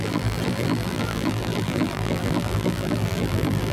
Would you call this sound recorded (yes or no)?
no